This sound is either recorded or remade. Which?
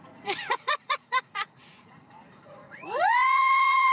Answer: remade